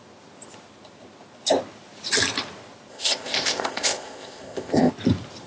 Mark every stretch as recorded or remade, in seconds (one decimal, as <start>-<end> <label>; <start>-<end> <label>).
0.0-2.9 recorded; 2.9-4.9 remade; 4.9-5.5 recorded